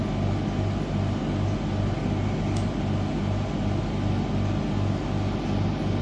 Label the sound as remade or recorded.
recorded